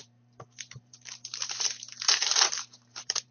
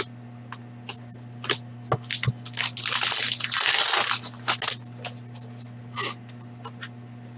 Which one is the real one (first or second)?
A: second